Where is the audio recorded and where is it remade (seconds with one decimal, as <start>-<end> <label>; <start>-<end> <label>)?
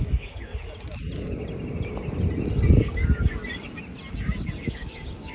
0.0-0.5 remade; 0.5-2.7 recorded; 2.7-3.4 remade; 3.4-4.1 recorded; 4.1-5.3 remade